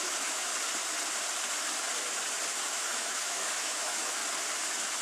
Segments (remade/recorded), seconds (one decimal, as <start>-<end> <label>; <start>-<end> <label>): 0.0-0.5 remade; 0.5-2.6 recorded; 2.6-4.2 remade; 4.2-5.0 recorded

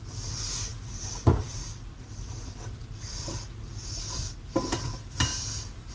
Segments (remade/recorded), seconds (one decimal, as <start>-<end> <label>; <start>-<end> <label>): 0.0-5.3 remade; 5.3-5.9 recorded

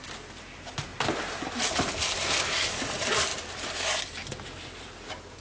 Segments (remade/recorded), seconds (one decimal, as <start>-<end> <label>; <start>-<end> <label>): 0.0-5.4 recorded

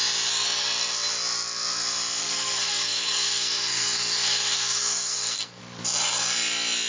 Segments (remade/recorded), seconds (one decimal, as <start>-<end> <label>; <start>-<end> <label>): 0.0-2.2 recorded; 2.2-5.6 remade; 5.6-6.9 recorded

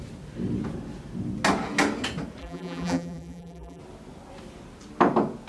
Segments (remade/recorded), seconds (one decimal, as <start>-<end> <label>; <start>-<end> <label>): 0.0-2.4 recorded; 2.4-3.8 remade; 3.8-5.5 recorded

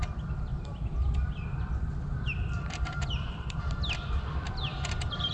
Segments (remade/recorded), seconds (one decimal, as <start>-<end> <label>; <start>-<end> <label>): 0.0-0.5 recorded; 0.5-3.7 remade; 3.7-5.3 recorded

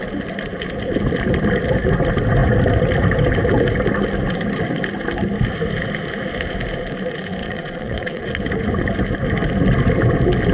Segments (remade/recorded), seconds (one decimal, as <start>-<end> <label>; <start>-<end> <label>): 0.0-7.4 recorded; 7.4-8.3 remade; 8.3-10.5 recorded

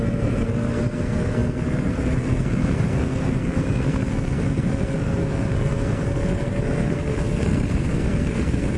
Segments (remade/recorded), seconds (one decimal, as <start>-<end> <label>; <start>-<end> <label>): 0.0-8.8 remade